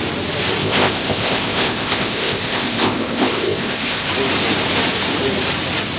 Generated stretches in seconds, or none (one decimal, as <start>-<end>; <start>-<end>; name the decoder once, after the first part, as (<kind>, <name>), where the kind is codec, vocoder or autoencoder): 0.6-4.1 (codec, ZipCodec)